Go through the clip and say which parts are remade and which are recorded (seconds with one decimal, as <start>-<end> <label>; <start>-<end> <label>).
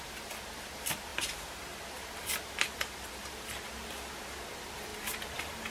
0.0-5.7 recorded